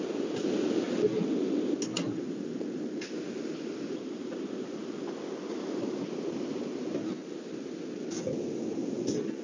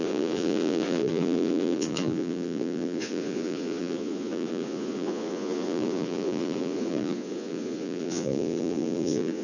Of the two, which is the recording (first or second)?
first